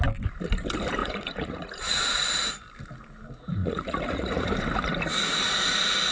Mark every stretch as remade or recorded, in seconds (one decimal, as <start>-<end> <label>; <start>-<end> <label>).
0.0-1.0 recorded; 1.0-2.5 remade; 2.5-3.6 recorded; 3.6-4.5 remade; 4.5-6.1 recorded